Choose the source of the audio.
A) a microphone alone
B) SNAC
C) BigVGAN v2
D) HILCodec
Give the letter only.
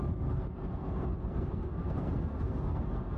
B